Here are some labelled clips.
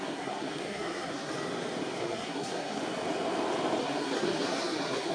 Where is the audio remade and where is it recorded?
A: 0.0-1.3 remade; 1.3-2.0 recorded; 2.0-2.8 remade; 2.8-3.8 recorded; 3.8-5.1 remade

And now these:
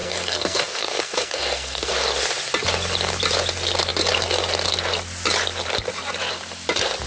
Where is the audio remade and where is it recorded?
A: 0.0-1.9 remade; 1.9-7.1 recorded

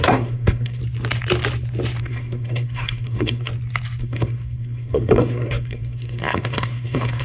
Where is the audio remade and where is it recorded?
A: 0.0-0.8 remade; 0.8-2.0 recorded; 2.0-3.5 remade; 3.5-4.0 recorded; 4.0-7.2 remade

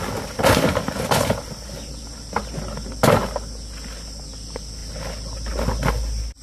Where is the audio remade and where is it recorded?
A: 0.0-6.4 recorded